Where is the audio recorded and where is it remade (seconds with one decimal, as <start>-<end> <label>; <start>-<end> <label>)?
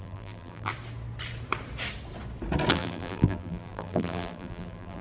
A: 0.0-0.7 remade; 0.7-2.7 recorded; 2.7-5.0 remade